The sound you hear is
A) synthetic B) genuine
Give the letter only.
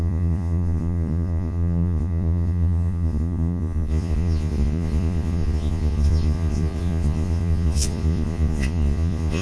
A